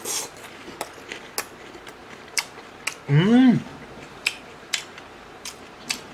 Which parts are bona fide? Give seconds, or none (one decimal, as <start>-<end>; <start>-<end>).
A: 0.0-2.0; 2.8-3.7